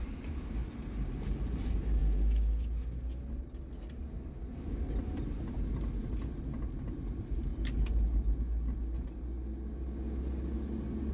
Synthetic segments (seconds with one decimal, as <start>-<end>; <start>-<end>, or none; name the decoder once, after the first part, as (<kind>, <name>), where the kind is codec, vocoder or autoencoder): 0.0-2.0 (vocoder, BigVGAN v2); 6.9-7.5